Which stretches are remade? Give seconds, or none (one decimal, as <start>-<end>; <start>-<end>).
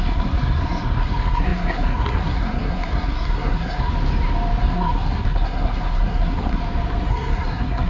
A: 0.0-3.9; 4.6-6.6; 7.1-7.9